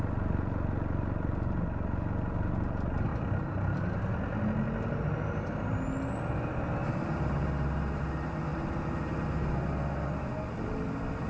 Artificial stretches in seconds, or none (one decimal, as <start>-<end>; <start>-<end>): none